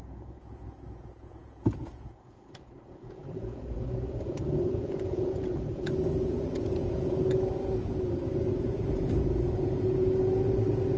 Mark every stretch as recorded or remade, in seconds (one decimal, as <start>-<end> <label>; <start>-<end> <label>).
0.0-11.0 remade